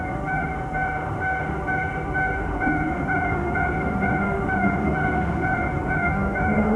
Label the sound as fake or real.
fake